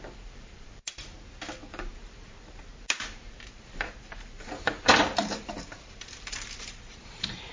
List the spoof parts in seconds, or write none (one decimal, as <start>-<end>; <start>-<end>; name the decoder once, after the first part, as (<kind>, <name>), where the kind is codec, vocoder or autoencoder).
0.0-1.0 (vocoder, BigVGAN v2); 1.9-7.5